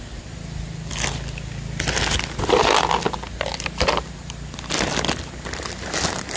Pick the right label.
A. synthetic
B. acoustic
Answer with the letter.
B